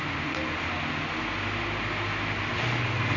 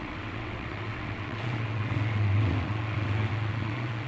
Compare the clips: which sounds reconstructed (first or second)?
second